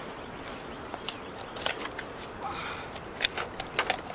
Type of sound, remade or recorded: recorded